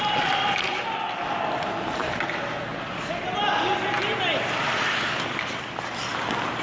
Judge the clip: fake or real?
real